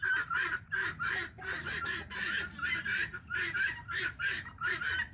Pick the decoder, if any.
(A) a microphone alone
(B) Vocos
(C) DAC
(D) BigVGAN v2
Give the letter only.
D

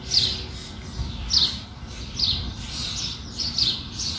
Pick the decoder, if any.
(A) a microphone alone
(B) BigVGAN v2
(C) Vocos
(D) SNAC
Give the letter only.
A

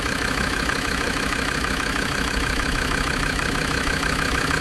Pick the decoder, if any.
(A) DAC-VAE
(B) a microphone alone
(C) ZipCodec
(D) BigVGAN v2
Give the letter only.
A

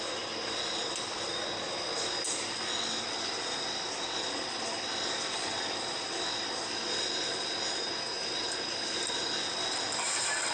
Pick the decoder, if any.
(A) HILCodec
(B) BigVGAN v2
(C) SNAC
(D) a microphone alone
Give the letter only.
D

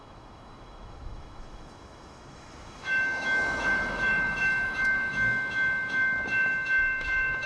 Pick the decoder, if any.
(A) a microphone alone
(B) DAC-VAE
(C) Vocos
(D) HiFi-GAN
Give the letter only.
B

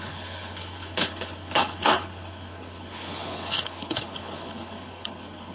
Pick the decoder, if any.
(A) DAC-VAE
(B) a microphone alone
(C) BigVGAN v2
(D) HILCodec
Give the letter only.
D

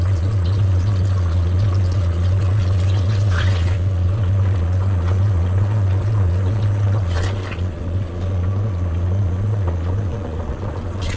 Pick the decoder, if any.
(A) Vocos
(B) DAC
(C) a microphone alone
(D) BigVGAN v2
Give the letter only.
A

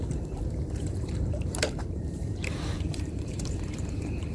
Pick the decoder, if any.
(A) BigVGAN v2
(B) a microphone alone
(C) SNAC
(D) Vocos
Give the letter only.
A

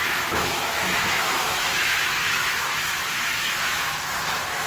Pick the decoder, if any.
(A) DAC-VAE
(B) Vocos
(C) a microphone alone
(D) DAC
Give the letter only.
A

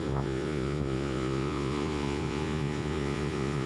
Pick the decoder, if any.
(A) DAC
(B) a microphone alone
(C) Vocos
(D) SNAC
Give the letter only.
C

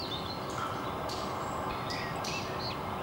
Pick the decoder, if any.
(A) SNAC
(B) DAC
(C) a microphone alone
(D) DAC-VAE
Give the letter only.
C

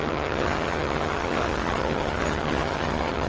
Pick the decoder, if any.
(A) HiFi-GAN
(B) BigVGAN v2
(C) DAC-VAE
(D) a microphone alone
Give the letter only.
A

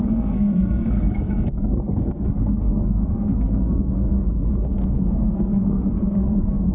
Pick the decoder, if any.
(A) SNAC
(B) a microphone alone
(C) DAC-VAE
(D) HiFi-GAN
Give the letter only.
A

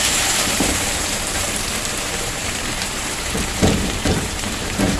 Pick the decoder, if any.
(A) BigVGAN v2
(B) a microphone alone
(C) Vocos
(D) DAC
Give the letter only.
A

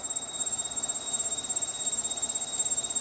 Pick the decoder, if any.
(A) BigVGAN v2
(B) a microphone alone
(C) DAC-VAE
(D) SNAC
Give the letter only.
B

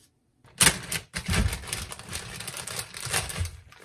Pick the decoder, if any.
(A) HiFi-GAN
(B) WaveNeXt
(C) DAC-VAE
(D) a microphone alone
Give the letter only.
D